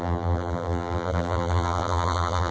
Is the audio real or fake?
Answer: fake